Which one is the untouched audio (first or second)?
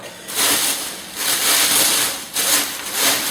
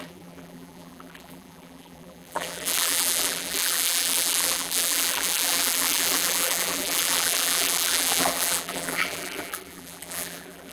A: first